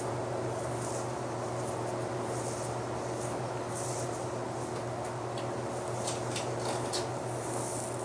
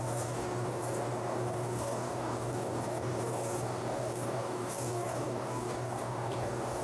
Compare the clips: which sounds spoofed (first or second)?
second